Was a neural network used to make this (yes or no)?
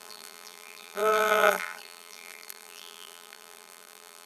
yes